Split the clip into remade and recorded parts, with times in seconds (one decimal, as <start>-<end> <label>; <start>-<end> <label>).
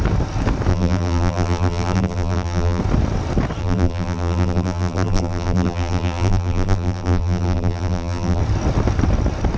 0.0-0.7 recorded; 0.7-2.8 remade; 2.8-3.6 recorded; 3.6-8.4 remade; 8.4-9.6 recorded